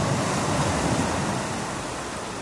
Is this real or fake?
real